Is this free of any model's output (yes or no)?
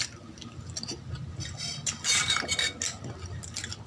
yes